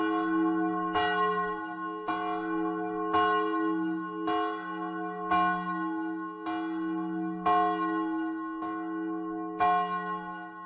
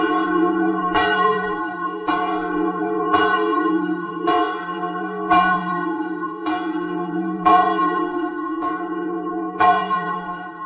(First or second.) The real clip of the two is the first